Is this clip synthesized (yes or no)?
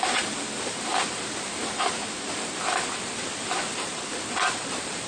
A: no